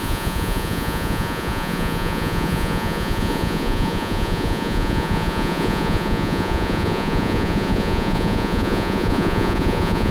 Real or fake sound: fake